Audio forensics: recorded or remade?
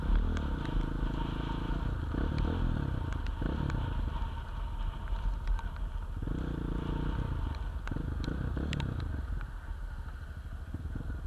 recorded